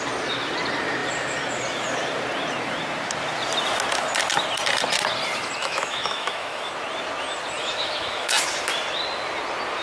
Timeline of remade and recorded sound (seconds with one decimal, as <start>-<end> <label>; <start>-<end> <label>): 0.0-5.6 recorded; 5.6-6.7 remade; 6.7-7.6 recorded; 7.6-8.3 remade; 8.3-9.8 recorded